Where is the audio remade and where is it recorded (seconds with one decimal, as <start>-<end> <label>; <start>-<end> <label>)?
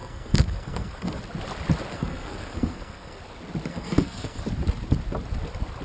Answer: 0.0-1.2 remade; 1.2-1.9 recorded; 1.9-3.2 remade; 3.2-3.7 recorded; 3.7-4.4 remade; 4.4-5.8 recorded